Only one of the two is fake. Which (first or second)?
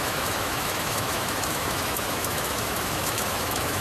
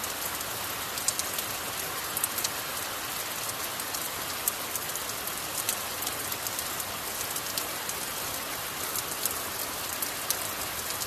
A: first